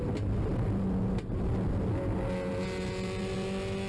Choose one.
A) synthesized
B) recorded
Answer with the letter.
B